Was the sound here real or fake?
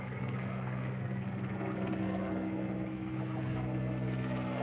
fake